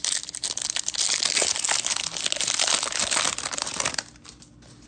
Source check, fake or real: real